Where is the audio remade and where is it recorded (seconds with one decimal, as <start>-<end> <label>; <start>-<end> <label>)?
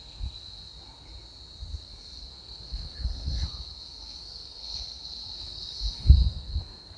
0.0-0.7 remade; 0.7-1.8 recorded; 1.8-7.0 remade